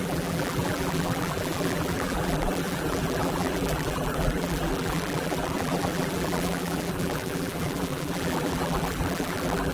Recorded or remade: remade